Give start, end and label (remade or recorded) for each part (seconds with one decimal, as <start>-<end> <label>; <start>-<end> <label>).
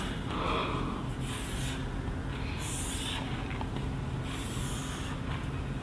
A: 0.0-5.8 recorded